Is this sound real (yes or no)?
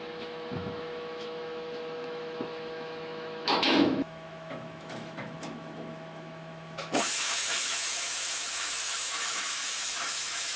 no